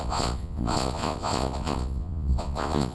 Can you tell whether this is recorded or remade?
remade